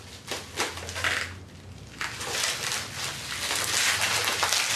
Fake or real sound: real